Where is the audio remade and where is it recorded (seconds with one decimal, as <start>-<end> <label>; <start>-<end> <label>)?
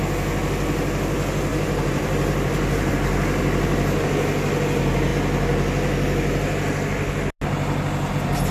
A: 0.0-1.5 recorded; 1.5-2.9 remade; 2.9-8.5 recorded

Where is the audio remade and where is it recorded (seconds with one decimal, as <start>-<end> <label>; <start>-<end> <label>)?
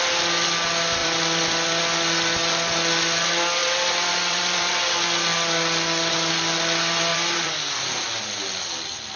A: 0.0-1.0 recorded; 1.0-1.8 remade; 1.8-3.6 recorded; 3.6-4.8 remade; 4.8-7.1 recorded; 7.1-7.9 remade; 7.9-9.2 recorded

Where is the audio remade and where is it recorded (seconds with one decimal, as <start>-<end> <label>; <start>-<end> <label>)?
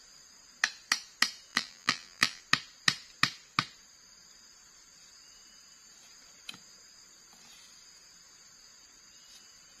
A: 0.0-1.5 recorded; 1.5-2.4 remade; 2.4-9.8 recorded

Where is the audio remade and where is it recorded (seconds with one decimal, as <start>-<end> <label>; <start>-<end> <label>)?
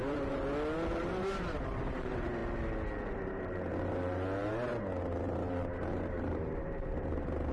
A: 0.0-0.4 remade; 0.4-1.0 recorded; 1.0-2.4 remade; 2.4-3.1 recorded; 3.1-4.7 remade; 4.7-5.2 recorded; 5.2-7.5 remade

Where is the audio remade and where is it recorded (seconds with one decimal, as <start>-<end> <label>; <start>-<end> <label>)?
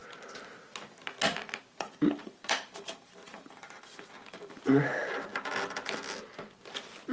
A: 0.0-2.2 recorded; 2.2-4.6 remade; 4.6-7.1 recorded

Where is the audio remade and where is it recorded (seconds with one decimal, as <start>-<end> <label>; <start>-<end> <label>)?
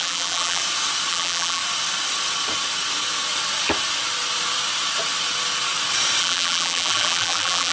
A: 0.0-0.6 remade; 0.6-1.1 recorded; 1.1-1.6 remade; 1.6-6.2 recorded; 6.2-7.7 remade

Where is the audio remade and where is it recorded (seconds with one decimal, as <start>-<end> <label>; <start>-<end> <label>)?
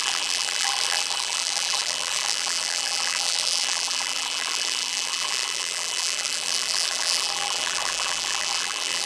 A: 0.0-9.1 remade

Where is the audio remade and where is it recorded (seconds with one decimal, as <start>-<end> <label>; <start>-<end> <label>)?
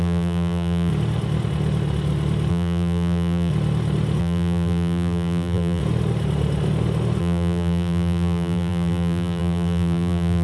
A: 0.0-0.9 remade; 0.9-2.5 recorded; 2.5-3.5 remade; 3.5-4.2 recorded; 4.2-5.8 remade; 5.8-7.2 recorded; 7.2-10.4 remade